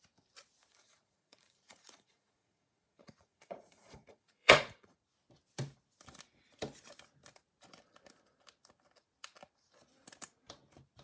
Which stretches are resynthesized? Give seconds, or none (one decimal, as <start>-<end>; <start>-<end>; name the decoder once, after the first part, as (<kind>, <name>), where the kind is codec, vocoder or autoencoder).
0.7-5.0 (vocoder, Vocos)